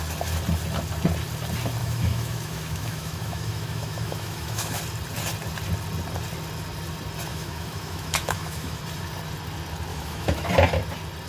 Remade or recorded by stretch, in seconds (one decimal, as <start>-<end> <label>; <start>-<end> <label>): 0.0-1.8 recorded; 1.8-4.8 remade; 4.8-7.3 recorded; 7.3-8.8 remade; 8.8-9.9 recorded; 9.9-10.5 remade; 10.5-11.3 recorded